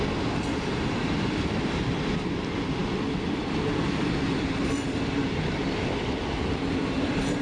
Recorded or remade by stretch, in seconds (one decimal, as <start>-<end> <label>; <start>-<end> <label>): 0.0-7.4 recorded